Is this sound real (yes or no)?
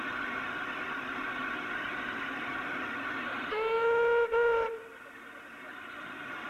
yes